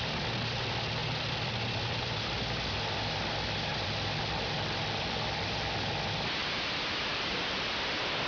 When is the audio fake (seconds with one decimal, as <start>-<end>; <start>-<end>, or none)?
1.0-1.5; 3.7-5.9; 6.4-8.3